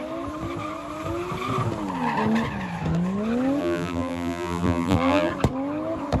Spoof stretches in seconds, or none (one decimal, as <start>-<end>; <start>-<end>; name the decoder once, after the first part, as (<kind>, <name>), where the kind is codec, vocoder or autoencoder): 3.6-5.3 (vocoder, BigVGAN v2)